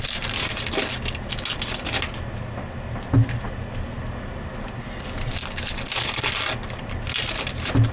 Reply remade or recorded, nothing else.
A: recorded